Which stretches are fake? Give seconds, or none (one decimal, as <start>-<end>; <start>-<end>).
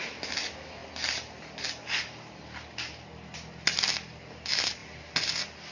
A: 0.8-4.2